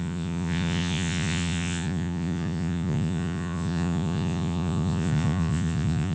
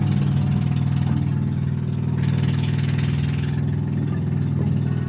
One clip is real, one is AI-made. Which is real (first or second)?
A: second